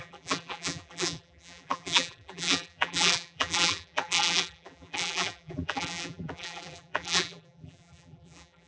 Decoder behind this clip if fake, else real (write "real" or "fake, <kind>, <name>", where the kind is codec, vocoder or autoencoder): fake, vocoder, BigVGAN v2